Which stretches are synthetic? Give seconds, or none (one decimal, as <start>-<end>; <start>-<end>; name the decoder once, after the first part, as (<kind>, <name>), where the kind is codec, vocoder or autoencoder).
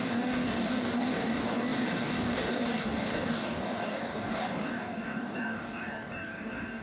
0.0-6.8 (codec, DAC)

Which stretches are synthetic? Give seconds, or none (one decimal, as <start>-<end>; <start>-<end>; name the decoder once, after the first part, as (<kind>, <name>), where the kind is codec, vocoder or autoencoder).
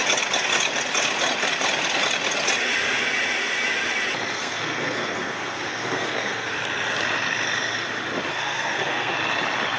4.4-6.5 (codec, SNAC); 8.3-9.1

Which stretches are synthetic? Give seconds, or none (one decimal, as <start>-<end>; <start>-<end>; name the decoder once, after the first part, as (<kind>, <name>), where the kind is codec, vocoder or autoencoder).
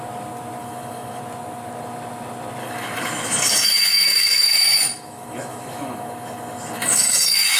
0.6-1.2 (autoencoder, DAC-VAE); 2.6-7.6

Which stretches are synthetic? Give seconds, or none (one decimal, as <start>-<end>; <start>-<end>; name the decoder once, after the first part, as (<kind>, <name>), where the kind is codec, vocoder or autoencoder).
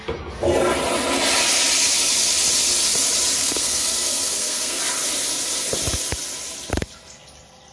3.4-4.8 (codec, SNAC)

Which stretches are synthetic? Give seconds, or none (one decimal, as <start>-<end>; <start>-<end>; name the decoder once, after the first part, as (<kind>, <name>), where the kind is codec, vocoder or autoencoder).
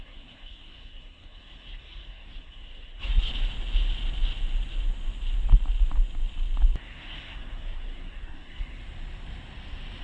0.0-3.3 (codec, SNAC); 6.8-8.8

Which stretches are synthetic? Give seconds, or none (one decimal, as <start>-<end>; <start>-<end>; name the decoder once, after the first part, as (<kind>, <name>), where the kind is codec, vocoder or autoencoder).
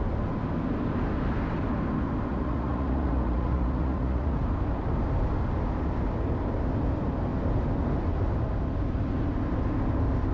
2.3-4.4 (vocoder, Vocos)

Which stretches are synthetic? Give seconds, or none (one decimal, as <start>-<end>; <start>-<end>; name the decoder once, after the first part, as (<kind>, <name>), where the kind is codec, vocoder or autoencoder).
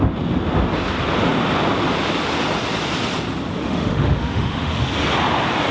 3.6-4.7 (autoencoder, DAC-VAE)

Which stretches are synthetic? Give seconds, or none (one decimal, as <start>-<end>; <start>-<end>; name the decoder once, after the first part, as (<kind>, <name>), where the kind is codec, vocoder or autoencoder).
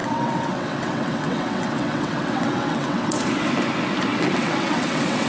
0.0-3.2 (vocoder, WaveNeXt); 4.1-5.3